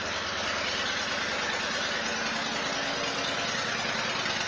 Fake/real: real